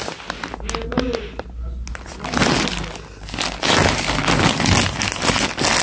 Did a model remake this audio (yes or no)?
no